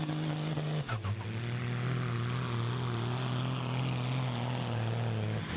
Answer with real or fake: real